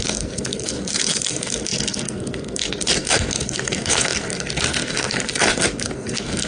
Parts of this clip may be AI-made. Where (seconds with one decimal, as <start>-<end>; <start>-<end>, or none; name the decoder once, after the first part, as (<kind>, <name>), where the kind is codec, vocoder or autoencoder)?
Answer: 0.0-6.5 (codec, SNAC)